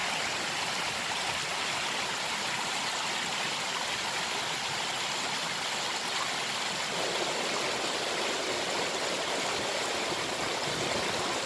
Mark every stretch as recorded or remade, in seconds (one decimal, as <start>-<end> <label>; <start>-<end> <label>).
0.0-11.5 recorded